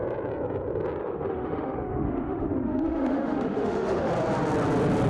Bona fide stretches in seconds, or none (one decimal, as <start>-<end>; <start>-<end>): 0.0-1.0; 4.1-5.1